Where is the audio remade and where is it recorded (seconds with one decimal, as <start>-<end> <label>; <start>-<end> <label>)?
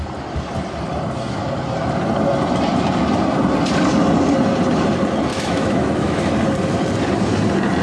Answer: 0.0-5.3 recorded; 5.3-6.3 remade; 6.3-7.8 recorded